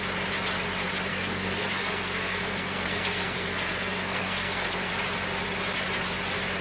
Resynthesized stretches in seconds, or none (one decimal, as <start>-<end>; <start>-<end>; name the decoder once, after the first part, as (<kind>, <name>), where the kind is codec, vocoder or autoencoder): 1.1-4.9 (codec, SNAC)